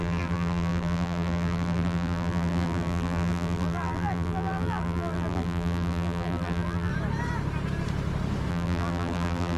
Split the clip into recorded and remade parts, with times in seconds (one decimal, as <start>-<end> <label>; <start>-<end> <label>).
0.0-6.9 remade; 6.9-8.5 recorded; 8.5-9.6 remade